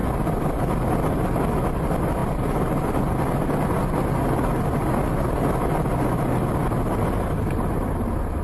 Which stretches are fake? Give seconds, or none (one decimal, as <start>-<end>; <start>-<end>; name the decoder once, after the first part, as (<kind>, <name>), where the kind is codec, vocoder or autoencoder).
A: none